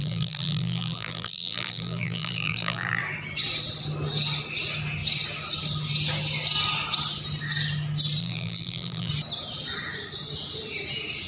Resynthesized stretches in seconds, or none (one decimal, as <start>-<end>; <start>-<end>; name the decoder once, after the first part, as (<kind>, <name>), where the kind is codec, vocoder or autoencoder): 0.0-3.0 (vocoder, BigVGAN v2); 8.2-9.1